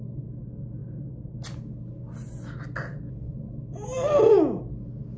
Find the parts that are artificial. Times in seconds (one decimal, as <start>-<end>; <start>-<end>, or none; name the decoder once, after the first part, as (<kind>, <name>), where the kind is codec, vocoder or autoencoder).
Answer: none